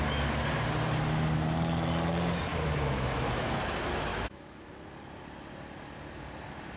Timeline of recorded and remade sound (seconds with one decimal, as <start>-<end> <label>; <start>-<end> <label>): 0.0-2.5 recorded; 2.5-3.6 remade; 3.6-4.1 recorded; 4.1-4.7 remade; 4.7-6.8 recorded